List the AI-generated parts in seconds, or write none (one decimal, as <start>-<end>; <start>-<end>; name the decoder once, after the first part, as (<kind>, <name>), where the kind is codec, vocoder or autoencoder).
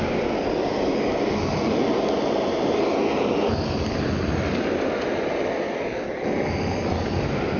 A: none